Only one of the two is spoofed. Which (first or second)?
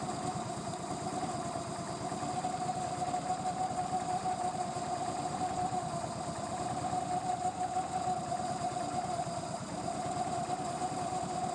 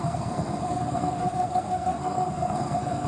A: second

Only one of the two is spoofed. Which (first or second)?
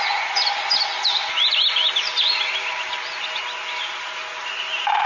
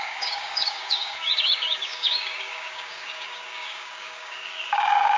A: second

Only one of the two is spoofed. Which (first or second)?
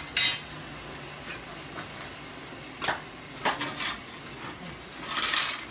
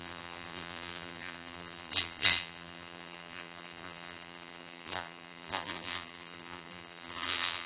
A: second